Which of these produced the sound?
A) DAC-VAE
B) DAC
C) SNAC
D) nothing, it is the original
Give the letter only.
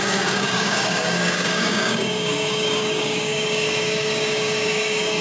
B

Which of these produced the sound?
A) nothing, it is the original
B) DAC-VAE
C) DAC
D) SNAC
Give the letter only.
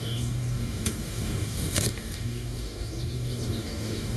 C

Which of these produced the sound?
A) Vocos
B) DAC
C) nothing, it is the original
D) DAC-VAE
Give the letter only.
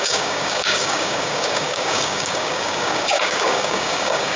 B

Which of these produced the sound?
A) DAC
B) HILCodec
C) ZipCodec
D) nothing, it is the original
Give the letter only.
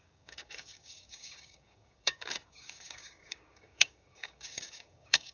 A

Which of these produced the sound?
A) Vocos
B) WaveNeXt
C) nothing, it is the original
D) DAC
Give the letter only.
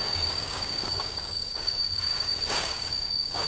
D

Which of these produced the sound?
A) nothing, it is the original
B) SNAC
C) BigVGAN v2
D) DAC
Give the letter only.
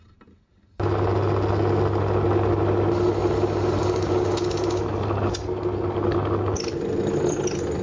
A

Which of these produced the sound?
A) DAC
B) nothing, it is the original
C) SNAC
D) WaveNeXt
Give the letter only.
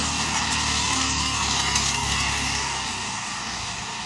A